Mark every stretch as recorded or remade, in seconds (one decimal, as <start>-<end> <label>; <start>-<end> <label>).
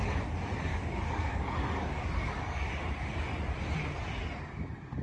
0.0-0.7 recorded; 0.7-2.8 remade; 2.8-5.0 recorded